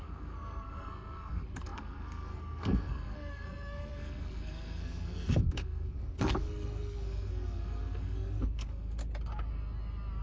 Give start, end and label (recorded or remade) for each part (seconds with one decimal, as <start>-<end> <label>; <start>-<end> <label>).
0.0-9.0 remade; 9.0-10.2 recorded